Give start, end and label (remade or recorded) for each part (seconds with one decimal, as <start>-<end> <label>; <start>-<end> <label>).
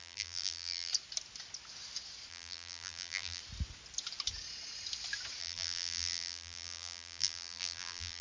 0.0-0.9 remade; 0.9-2.3 recorded; 2.3-3.4 remade; 3.4-5.4 recorded; 5.4-8.2 remade